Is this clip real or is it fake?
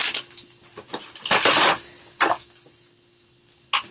real